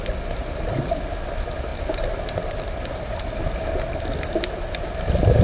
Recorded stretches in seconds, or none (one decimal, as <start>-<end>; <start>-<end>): 0.0-5.4

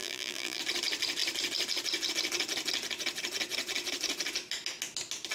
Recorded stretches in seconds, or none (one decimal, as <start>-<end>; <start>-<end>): 0.6-5.3

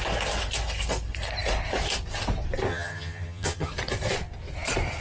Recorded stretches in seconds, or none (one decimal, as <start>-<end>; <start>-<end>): 0.0-2.7; 3.7-5.0